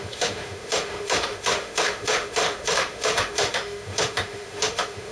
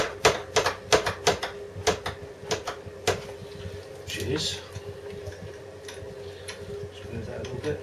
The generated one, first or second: first